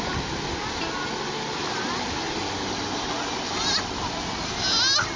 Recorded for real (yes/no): yes